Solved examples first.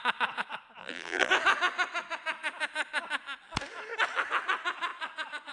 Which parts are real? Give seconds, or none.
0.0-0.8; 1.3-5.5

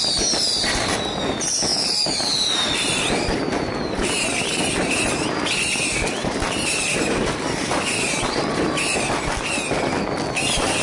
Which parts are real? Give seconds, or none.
0.0-1.7; 4.6-6.2; 9.5-10.8

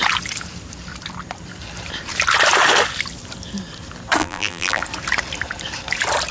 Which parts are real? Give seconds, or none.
0.0-4.2; 4.8-6.3